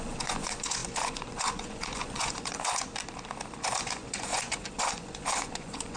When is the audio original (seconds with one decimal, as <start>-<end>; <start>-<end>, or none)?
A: 2.9-3.6